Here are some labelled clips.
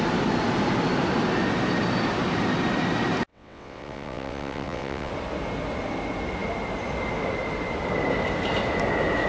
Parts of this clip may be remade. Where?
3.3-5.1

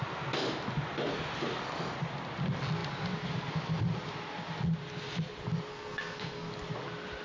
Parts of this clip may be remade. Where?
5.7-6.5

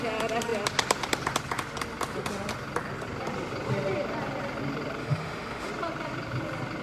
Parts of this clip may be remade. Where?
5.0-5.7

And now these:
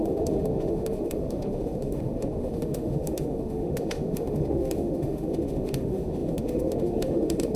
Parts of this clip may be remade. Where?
0.0-7.6

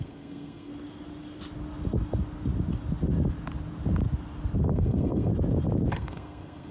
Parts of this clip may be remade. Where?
0.0-0.7; 4.7-5.3; 5.9-6.7

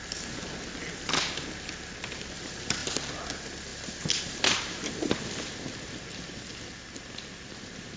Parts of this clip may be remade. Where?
none